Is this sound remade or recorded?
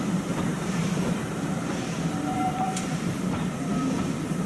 remade